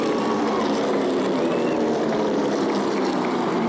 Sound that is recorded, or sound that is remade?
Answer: remade